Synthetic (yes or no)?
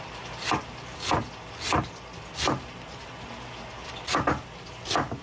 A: no